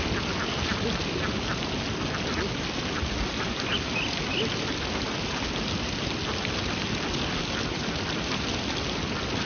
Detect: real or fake real